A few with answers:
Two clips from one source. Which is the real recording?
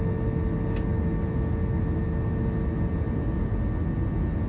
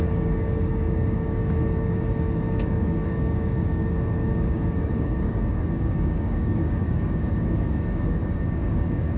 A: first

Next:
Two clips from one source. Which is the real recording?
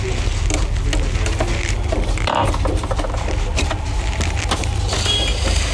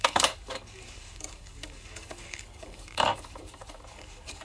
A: first